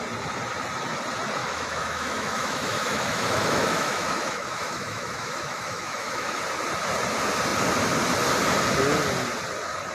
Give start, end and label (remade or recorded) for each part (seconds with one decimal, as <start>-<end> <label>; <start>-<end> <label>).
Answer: 0.0-1.4 recorded; 1.4-6.4 remade; 6.4-9.9 recorded